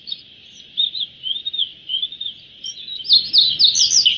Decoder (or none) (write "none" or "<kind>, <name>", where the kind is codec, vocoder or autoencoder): none